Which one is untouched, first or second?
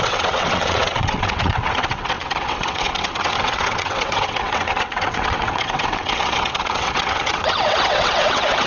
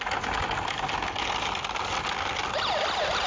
second